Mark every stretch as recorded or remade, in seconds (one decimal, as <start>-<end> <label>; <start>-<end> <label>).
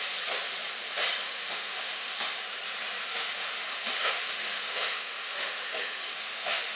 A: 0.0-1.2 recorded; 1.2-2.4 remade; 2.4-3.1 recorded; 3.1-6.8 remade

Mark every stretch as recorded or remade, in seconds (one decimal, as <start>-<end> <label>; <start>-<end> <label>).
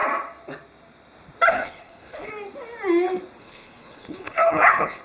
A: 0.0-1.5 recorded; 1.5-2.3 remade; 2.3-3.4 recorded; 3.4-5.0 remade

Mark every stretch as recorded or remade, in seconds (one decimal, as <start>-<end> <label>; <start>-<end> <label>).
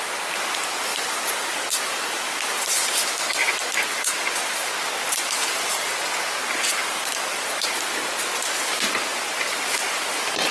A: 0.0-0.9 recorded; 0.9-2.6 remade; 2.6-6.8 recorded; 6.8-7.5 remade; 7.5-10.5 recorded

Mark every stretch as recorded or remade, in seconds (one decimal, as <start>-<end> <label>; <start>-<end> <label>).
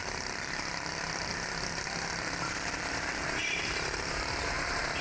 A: 0.0-1.3 remade; 1.3-2.1 recorded; 2.1-5.0 remade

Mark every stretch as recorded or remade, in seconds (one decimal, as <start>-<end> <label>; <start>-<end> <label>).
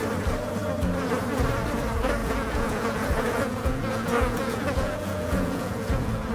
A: 0.0-2.2 recorded; 2.2-6.3 remade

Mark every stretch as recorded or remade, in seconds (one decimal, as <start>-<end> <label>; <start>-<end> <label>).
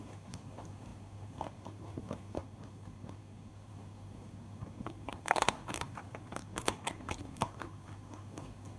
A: 0.0-8.8 remade